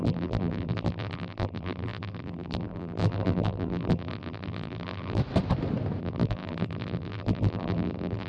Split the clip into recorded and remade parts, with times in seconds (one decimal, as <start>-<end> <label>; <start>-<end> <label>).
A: 0.0-5.2 remade; 5.2-6.0 recorded; 6.0-8.3 remade